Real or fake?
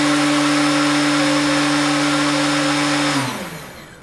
real